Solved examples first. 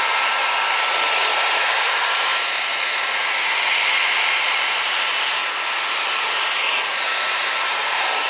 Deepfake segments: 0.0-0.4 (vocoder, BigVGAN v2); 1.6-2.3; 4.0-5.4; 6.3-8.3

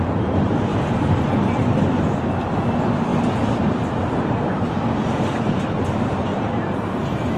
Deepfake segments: 0.7-1.4 (vocoder, BigVGAN v2); 3.1-4.7

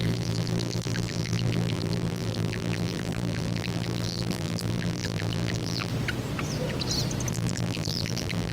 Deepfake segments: 0.0-5.9 (vocoder, BigVGAN v2); 7.3-8.5

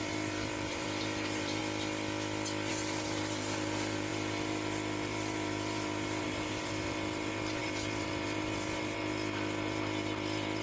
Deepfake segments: 0.0-1.6 (vocoder, BigVGAN v2); 2.7-10.6

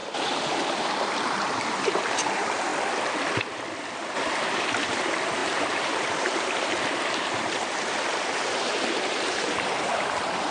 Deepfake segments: 0.0-2.7 (vocoder, BigVGAN v2); 4.9-10.5

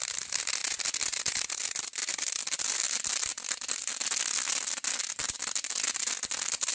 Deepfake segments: 0.6-1.6 (vocoder, BigVGAN v2)